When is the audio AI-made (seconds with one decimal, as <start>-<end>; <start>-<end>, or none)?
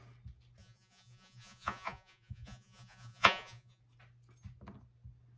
0.6-3.8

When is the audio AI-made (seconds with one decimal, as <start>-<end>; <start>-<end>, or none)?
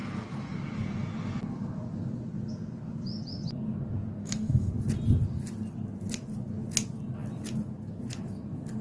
4.2-4.7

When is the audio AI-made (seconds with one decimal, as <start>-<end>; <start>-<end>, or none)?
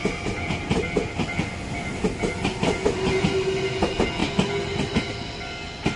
none